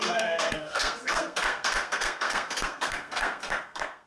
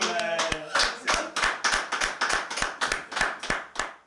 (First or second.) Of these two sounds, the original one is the second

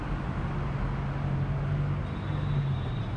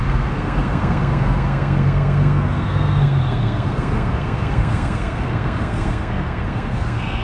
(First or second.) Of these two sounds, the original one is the first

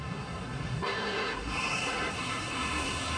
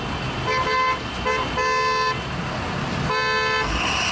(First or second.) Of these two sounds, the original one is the second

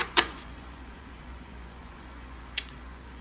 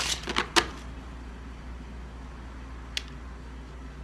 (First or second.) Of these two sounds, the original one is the second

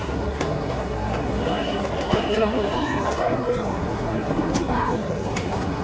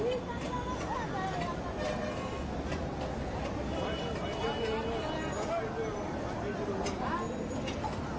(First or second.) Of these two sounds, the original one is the second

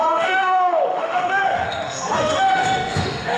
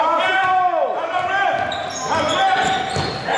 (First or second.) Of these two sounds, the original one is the second